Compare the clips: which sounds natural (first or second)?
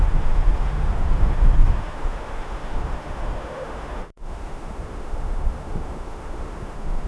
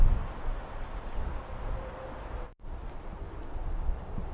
second